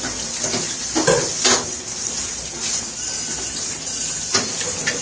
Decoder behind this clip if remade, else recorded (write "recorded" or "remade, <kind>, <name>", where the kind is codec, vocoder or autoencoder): recorded